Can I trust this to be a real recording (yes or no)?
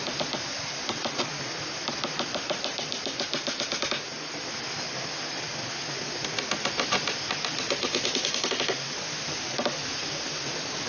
yes